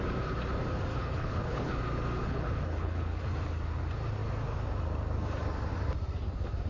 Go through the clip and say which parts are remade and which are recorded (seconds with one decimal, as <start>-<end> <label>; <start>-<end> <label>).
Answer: 0.0-0.9 recorded; 0.9-1.7 remade; 1.7-2.2 recorded; 2.2-3.2 remade; 3.2-6.7 recorded

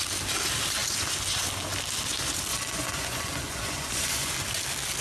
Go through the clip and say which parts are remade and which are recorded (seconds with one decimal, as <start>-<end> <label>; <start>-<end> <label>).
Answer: 0.0-2.5 recorded; 2.5-4.3 remade; 4.3-5.0 recorded

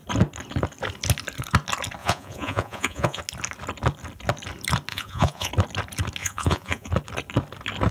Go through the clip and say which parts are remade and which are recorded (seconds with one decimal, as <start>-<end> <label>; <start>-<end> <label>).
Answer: 0.0-2.0 recorded; 2.0-3.2 remade; 3.2-4.9 recorded; 4.9-5.5 remade; 5.5-6.2 recorded; 6.2-6.9 remade; 6.9-7.9 recorded